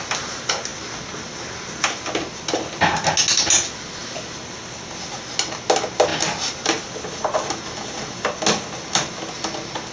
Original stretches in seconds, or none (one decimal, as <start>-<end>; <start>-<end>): 0.0-9.9